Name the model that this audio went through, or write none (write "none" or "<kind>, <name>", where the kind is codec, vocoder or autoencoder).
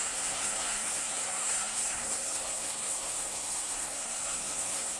codec, SNAC